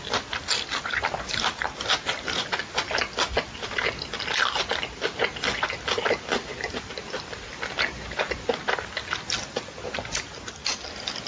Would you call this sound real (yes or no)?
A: yes